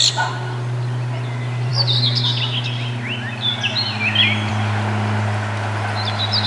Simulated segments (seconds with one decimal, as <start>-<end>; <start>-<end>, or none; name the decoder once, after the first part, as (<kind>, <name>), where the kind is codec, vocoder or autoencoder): none

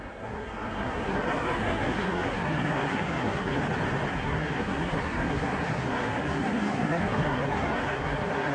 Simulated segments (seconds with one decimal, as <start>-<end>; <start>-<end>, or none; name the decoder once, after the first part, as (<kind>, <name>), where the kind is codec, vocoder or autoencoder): 0.0-3.6 (codec, SNAC); 4.1-8.5

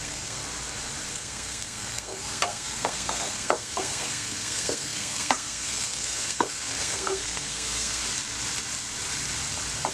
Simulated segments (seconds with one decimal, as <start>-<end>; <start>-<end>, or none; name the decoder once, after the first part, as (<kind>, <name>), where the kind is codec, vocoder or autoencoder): 0.0-0.4 (codec, SNAC); 1.1-8.0

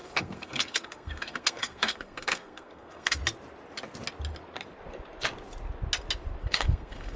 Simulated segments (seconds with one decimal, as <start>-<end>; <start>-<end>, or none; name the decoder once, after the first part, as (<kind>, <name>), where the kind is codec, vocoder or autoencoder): 0.0-3.2 (codec, SNAC); 6.4-7.2

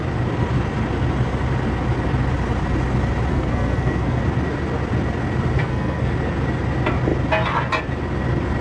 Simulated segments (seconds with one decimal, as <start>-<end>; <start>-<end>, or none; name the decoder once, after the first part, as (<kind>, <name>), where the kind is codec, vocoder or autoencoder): 3.3-4.2 (codec, SNAC); 5.5-6.1